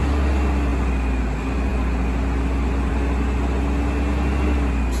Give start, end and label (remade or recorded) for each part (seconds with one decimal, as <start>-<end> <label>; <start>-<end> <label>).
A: 0.0-5.0 recorded